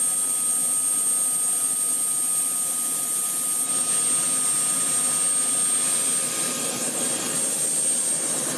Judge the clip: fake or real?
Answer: real